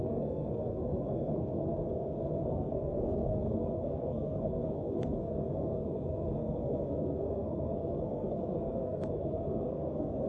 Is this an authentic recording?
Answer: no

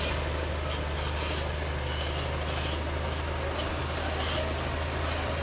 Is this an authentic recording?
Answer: yes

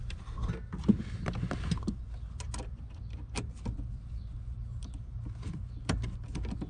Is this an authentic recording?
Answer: yes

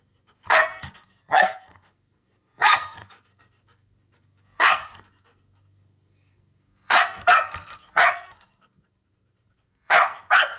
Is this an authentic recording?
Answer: no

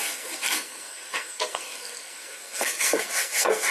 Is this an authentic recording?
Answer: no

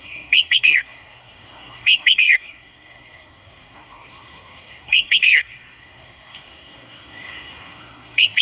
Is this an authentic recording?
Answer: no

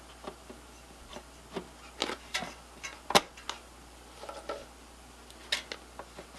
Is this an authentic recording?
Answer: yes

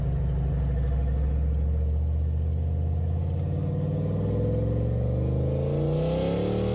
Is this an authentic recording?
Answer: yes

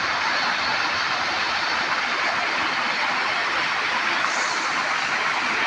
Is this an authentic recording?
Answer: yes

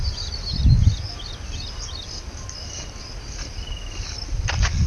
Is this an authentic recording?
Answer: yes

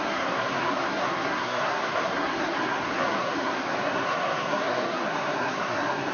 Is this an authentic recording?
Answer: no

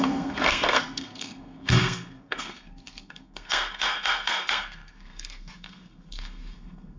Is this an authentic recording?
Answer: no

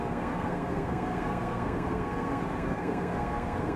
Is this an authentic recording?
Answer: no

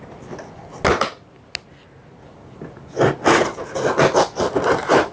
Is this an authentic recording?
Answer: yes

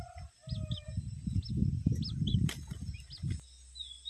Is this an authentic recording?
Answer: yes